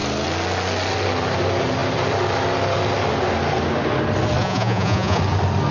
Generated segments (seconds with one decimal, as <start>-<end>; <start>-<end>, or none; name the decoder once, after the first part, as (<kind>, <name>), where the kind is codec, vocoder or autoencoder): 4.4-5.2 (vocoder, Vocos)